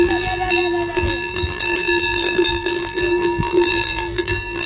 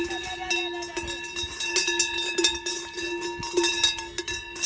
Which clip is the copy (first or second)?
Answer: first